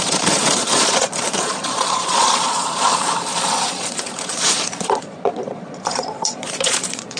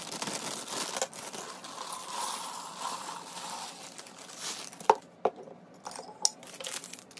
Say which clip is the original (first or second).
second